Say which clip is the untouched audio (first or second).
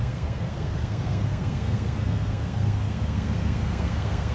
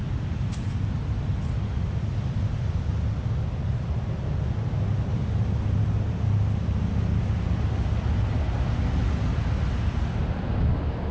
second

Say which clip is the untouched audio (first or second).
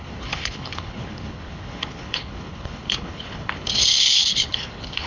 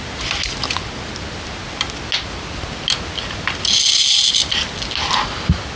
second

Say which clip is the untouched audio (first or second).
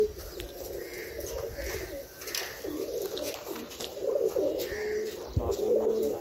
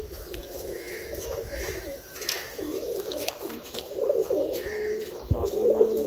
first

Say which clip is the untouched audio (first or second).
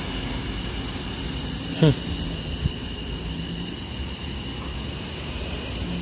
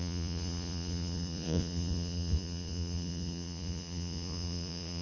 first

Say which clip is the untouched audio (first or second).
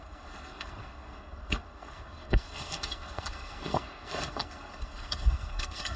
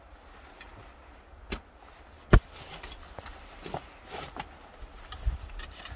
second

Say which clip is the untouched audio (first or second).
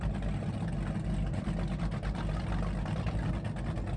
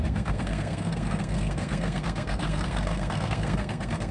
first